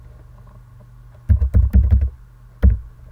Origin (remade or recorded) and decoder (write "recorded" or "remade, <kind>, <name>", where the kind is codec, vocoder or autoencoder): recorded